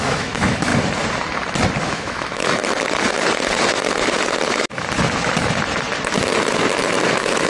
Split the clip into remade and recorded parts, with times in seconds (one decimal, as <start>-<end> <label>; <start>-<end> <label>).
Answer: 0.0-0.7 remade; 0.7-1.8 recorded; 1.8-2.6 remade; 2.6-7.1 recorded; 7.1-7.5 remade